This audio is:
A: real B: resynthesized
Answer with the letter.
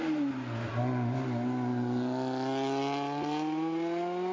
A